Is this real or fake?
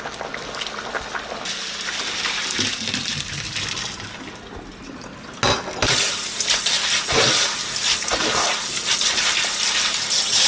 real